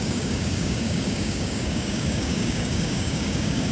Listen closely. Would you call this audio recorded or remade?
remade